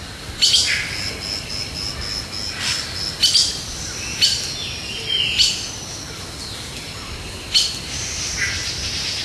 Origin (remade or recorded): recorded